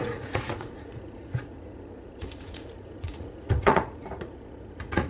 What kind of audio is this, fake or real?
fake